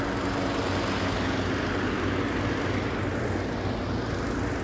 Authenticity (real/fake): real